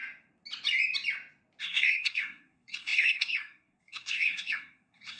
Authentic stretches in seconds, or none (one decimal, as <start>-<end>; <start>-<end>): 0.0-1.6